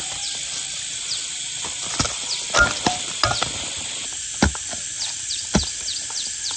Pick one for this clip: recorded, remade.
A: remade